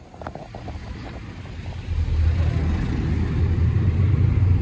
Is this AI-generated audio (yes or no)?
no